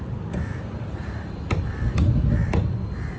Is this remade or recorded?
remade